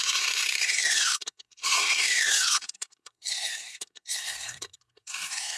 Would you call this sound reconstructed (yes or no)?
yes